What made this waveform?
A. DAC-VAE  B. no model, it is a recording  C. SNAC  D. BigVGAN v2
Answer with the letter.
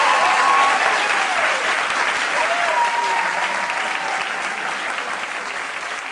B